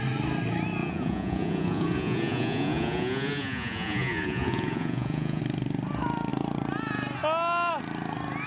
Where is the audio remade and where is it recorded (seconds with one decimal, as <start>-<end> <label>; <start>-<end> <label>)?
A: 0.0-0.8 recorded; 0.8-5.4 remade; 5.4-8.5 recorded